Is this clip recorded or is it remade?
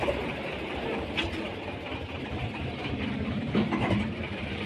remade